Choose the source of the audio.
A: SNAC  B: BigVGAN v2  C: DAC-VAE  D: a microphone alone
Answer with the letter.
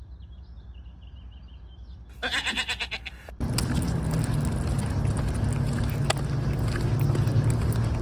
D